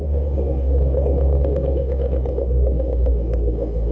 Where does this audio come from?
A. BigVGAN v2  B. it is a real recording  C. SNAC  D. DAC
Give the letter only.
D